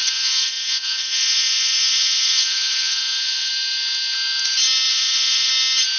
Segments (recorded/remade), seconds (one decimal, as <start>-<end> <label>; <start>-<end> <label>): 0.0-3.5 remade; 3.5-4.9 recorded; 4.9-5.5 remade; 5.5-6.0 recorded